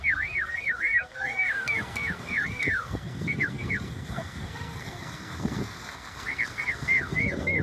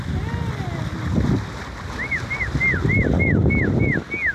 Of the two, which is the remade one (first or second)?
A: first